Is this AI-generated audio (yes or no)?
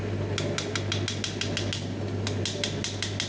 no